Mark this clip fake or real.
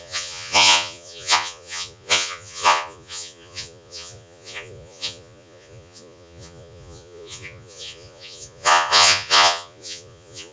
fake